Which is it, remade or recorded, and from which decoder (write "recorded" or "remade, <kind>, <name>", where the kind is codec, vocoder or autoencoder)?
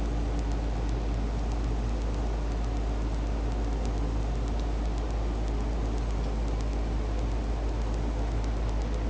recorded